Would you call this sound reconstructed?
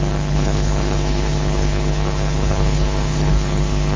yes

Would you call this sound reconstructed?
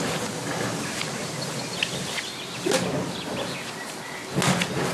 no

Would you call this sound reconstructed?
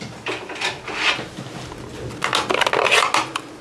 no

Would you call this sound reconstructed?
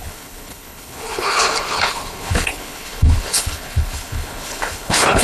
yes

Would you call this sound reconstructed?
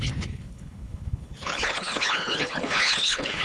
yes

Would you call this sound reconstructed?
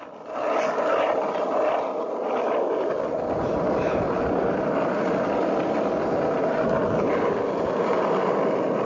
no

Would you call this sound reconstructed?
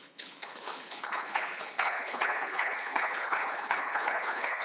yes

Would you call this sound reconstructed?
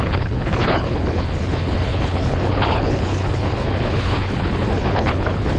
yes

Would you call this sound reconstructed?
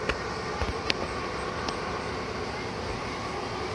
no